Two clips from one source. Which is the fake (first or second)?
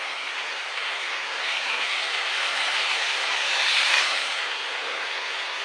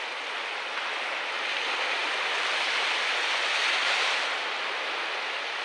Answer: first